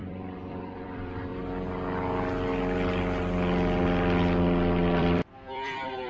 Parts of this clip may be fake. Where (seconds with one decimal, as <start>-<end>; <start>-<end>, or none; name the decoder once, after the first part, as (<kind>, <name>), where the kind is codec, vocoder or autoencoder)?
0.0-1.3 (vocoder, BigVGAN v2); 5.0-6.1